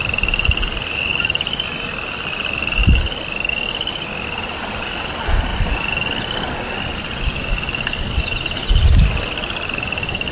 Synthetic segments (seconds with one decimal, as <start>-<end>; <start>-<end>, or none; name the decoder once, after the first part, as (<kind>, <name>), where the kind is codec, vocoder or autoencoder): none